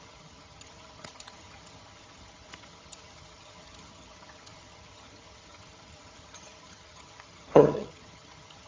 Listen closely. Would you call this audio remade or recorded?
remade